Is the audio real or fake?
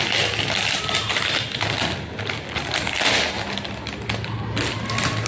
real